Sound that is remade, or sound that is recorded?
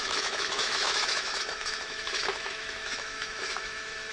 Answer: remade